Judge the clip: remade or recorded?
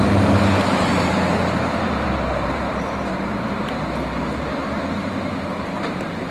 remade